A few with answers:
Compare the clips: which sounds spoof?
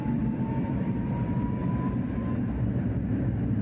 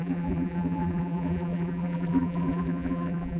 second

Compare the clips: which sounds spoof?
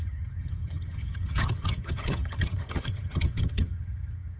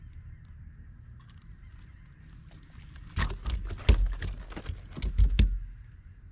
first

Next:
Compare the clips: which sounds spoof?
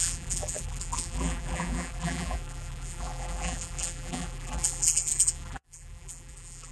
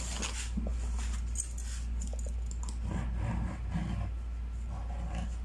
first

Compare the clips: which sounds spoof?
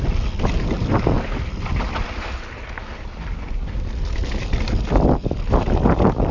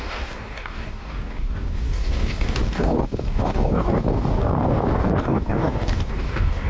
second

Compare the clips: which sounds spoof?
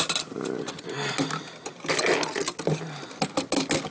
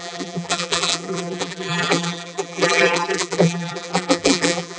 second